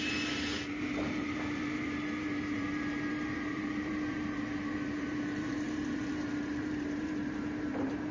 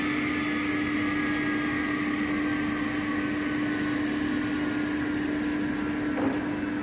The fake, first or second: first